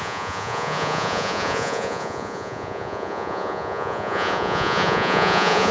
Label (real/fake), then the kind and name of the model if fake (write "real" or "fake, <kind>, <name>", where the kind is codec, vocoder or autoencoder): fake, vocoder, Vocos